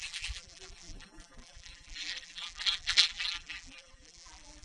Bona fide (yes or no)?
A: no